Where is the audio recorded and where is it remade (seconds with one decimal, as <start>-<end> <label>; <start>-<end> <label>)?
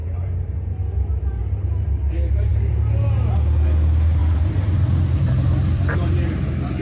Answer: 0.0-0.8 remade; 0.8-4.2 recorded; 4.2-6.8 remade